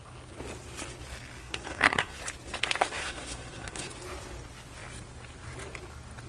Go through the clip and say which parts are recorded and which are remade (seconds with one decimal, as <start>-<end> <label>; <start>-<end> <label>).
0.0-1.4 recorded; 1.4-2.2 remade; 2.2-2.9 recorded; 2.9-3.9 remade; 3.9-6.3 recorded